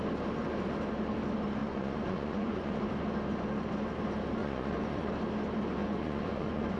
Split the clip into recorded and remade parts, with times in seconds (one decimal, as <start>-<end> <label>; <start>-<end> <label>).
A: 0.0-1.6 recorded; 1.6-2.9 remade; 2.9-4.4 recorded; 4.4-5.1 remade; 5.1-5.8 recorded; 5.8-6.8 remade